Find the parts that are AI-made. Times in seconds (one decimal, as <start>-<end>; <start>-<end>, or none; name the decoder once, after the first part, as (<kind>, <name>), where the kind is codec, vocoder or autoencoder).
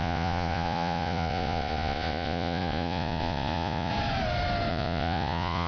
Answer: 0.0-3.9 (vocoder, Vocos); 4.7-5.7